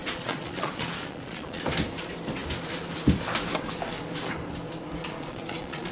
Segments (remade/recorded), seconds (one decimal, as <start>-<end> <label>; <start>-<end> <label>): 0.0-1.6 remade; 1.6-5.0 recorded; 5.0-5.9 remade